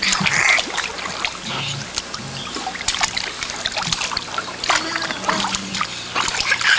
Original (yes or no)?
yes